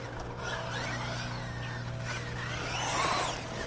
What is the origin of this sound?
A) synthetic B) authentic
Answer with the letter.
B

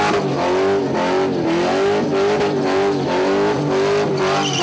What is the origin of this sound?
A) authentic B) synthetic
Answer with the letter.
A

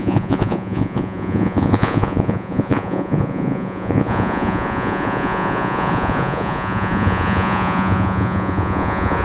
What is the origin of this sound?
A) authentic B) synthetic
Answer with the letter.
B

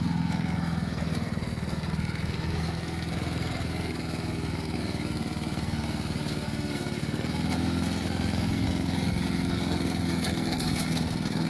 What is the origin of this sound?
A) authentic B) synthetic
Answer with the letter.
B